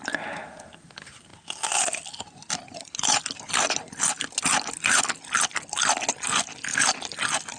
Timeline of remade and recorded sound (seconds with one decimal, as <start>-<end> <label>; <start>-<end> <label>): 0.0-7.6 recorded